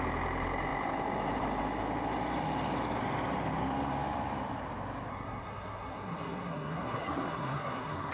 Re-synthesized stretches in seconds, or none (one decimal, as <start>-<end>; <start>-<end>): 5.1-8.1